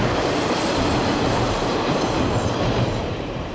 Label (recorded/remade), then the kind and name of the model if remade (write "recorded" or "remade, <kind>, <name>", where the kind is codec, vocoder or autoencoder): remade, vocoder, BigVGAN v2